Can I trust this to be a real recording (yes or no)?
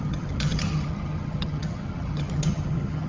no